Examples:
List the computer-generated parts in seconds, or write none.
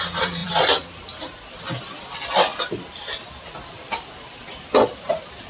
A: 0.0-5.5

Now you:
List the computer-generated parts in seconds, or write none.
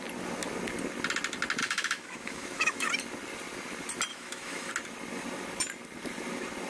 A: 1.6-2.9; 4.1-4.7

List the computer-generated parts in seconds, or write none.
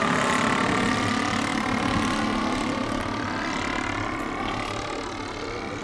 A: none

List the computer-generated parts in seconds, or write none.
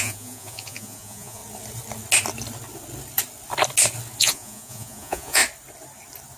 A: 0.0-1.4; 4.2-5.4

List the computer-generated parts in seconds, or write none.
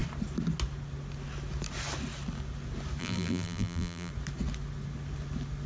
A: 3.0-4.1